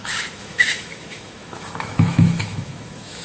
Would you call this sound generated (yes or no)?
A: yes